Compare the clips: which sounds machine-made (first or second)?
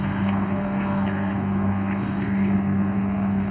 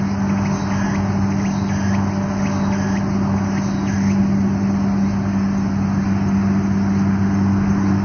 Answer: first